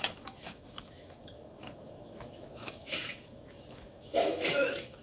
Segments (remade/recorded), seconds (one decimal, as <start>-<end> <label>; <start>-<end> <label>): 0.0-5.0 remade